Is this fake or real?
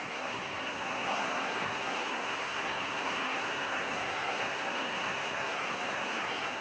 fake